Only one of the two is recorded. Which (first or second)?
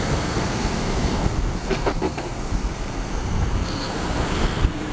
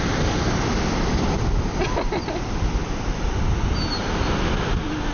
second